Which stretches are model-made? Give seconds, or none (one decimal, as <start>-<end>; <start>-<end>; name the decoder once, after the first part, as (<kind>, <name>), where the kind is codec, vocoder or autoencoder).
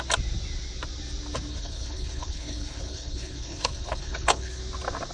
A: 1.5-4.6 (codec, HILCodec)